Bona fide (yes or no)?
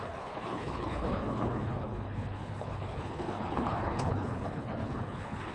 no